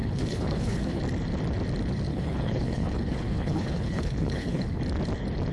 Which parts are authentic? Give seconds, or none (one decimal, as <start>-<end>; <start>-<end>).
1.0-2.1; 4.8-5.5